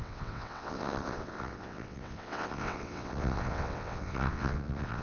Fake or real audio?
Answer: fake